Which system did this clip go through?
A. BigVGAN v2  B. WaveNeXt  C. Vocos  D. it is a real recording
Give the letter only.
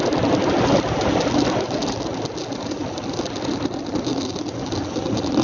D